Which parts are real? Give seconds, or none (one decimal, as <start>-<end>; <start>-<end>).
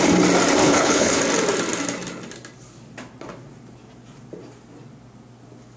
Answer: 0.0-0.6; 1.2-5.8